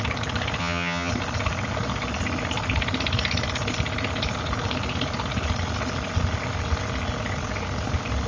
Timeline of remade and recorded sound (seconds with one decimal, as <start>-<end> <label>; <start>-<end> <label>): 0.0-0.6 recorded; 0.6-1.1 remade; 1.1-8.3 recorded

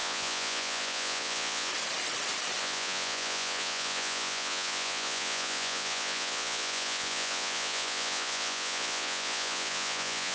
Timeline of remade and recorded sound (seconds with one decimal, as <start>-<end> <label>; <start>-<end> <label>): 0.0-1.7 remade; 1.7-2.6 recorded; 2.6-10.3 remade

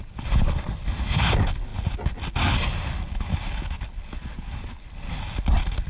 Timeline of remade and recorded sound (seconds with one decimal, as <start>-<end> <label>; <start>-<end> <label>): 0.0-5.9 recorded

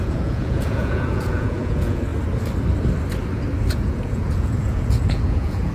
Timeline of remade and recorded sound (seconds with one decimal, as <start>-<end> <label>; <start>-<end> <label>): 0.0-2.1 remade; 2.1-3.7 recorded; 3.7-5.7 remade

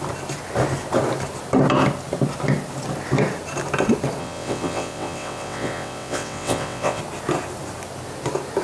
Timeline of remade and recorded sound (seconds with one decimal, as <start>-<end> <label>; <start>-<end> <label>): 0.0-4.2 recorded; 4.2-7.0 remade; 7.0-8.6 recorded